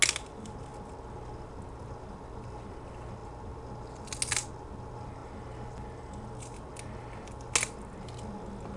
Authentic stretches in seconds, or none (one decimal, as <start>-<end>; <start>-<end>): 0.0-8.8